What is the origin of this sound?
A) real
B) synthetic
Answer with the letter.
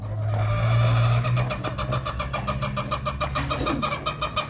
A